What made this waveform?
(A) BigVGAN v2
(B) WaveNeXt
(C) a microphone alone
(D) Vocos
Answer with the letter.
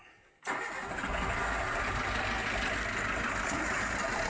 C